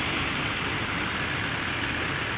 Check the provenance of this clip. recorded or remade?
recorded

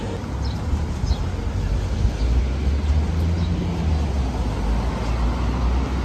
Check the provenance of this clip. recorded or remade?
recorded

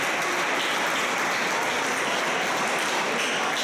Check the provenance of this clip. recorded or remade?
recorded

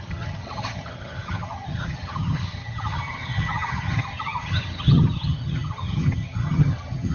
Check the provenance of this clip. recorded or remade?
remade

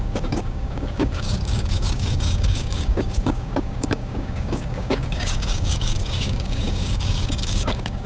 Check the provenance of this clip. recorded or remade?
remade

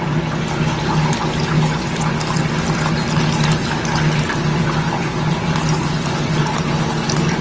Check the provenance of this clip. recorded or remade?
recorded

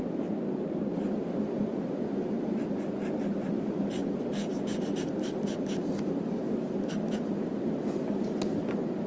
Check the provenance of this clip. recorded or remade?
recorded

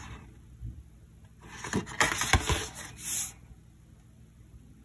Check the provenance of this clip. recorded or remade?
recorded